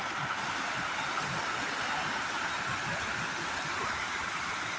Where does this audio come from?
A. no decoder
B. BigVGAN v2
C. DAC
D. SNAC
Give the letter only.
A